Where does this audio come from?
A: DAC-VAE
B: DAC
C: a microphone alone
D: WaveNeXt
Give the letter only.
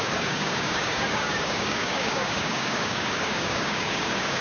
B